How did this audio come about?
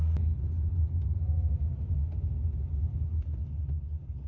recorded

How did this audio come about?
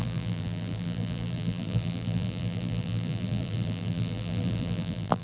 remade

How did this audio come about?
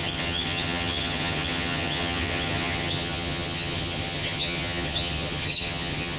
remade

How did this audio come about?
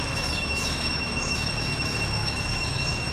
remade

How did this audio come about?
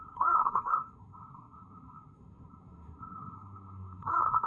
remade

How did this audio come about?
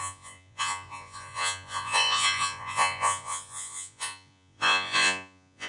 remade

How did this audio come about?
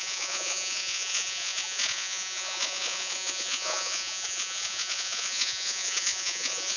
remade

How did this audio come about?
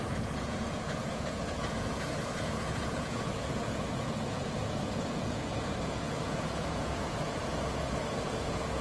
remade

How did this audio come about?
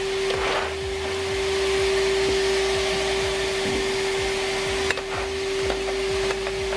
recorded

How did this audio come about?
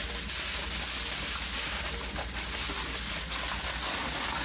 recorded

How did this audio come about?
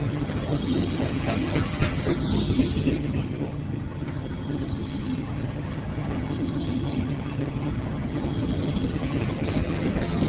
remade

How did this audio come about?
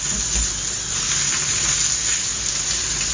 recorded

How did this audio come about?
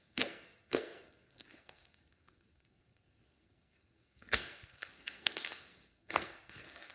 remade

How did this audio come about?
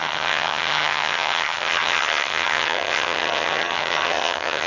remade